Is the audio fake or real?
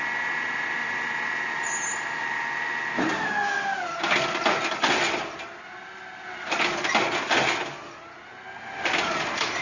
real